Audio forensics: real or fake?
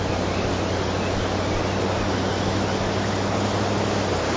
real